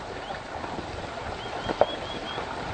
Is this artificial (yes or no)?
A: no